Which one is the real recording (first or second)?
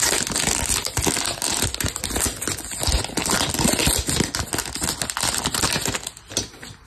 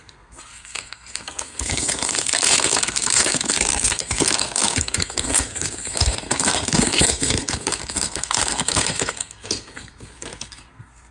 first